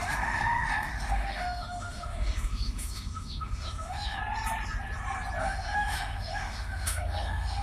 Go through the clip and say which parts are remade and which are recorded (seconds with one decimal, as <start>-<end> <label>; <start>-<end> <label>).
0.0-4.2 remade; 4.2-5.4 recorded; 5.4-7.6 remade